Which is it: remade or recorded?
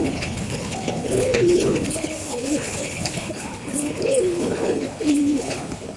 remade